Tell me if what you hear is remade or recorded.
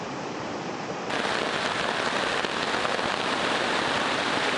recorded